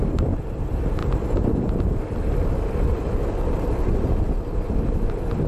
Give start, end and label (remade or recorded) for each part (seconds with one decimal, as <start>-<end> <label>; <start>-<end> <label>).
0.0-5.5 recorded